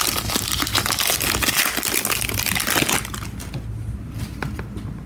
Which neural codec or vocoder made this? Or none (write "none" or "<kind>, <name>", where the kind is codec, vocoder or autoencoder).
none